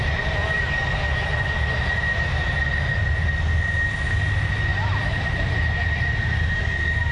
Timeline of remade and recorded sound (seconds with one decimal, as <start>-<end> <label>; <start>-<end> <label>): 0.0-7.1 recorded